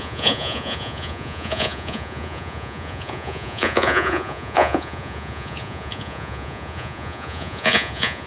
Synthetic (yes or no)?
yes